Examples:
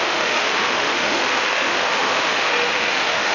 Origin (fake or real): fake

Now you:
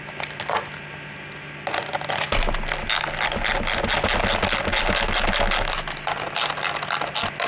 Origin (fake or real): real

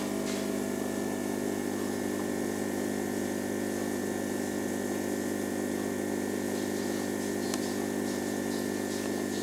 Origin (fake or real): real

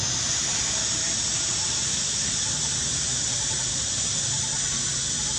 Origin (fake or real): real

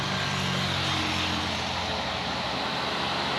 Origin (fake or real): real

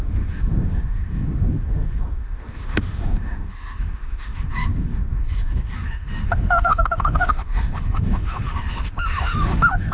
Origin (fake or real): fake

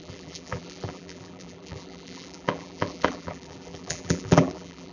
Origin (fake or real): fake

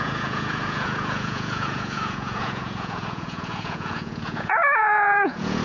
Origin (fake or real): fake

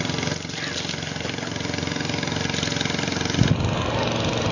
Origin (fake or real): real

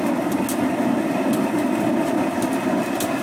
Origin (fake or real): real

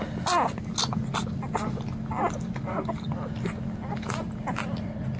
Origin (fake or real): real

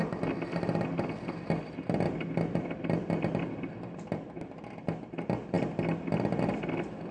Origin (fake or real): real